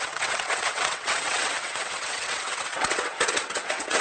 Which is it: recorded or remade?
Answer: remade